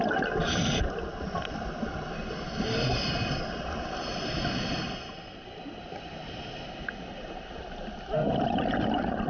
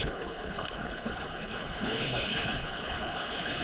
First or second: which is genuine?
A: first